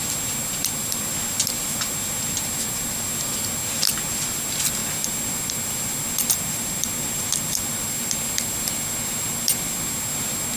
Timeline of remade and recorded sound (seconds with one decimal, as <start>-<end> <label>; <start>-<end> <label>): 0.0-10.6 recorded